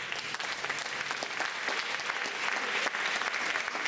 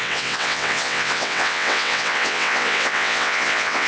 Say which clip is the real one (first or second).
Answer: first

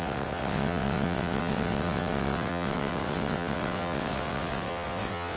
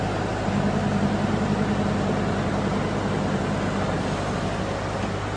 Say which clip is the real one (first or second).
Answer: second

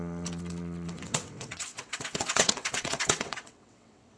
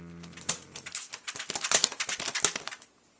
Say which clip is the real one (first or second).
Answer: second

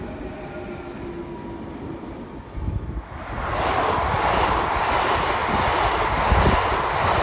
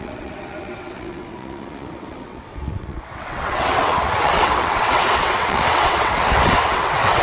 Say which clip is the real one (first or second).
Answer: first